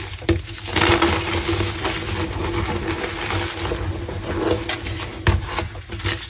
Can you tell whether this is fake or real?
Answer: real